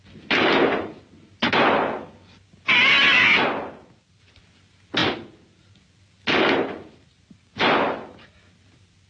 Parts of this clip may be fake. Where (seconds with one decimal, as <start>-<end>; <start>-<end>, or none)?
none

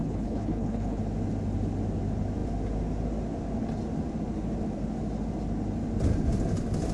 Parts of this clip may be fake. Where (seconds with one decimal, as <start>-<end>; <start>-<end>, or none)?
0.0-1.0

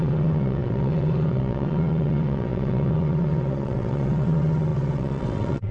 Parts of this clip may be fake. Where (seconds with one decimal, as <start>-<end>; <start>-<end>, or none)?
0.0-5.7

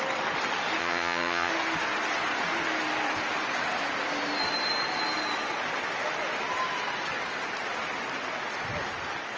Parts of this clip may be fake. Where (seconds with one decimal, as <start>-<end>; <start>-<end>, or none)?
0.8-1.5